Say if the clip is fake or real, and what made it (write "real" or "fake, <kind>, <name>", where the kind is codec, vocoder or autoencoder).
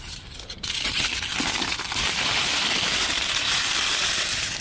fake, vocoder, BigVGAN v2